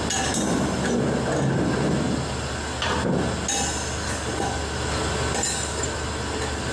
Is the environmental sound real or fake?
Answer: real